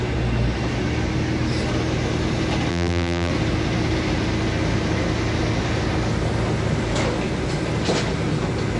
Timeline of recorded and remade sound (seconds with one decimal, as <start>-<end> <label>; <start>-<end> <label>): 0.0-2.7 recorded; 2.7-3.3 remade; 3.3-8.8 recorded